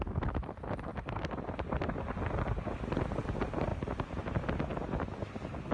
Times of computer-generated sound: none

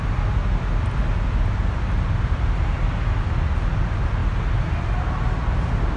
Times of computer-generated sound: none

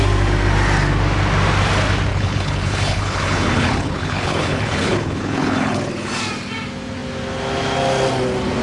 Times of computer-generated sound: 2.1-6.1 (codec, HILCodec)

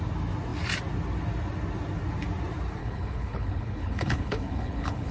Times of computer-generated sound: 2.8-5.1 (codec, HILCodec)